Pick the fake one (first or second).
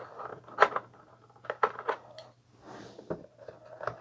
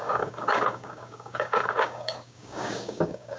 second